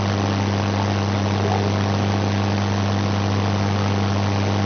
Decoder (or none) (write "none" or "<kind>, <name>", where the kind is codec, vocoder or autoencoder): none